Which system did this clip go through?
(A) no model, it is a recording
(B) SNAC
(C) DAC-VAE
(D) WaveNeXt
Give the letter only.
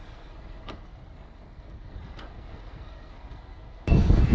B